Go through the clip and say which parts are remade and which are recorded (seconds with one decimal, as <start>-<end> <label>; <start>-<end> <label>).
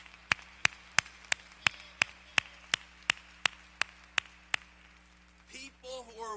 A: 0.0-2.3 remade; 2.3-5.9 recorded; 5.9-6.4 remade